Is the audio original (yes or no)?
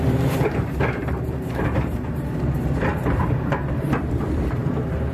no